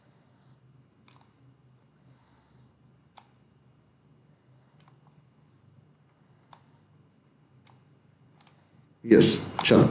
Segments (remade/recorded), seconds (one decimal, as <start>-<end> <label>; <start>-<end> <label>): 0.0-9.9 recorded